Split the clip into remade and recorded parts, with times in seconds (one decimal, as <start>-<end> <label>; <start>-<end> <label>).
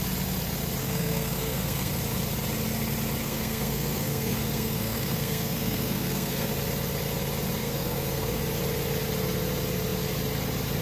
0.0-0.8 recorded; 0.8-1.9 remade; 1.9-3.2 recorded; 3.2-6.5 remade; 6.5-7.6 recorded; 7.6-8.4 remade; 8.4-10.8 recorded